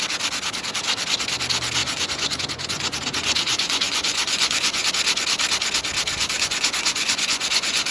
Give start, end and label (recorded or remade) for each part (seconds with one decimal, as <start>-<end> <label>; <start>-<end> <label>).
0.0-1.8 recorded; 1.8-4.9 remade; 4.9-6.1 recorded; 6.1-7.9 remade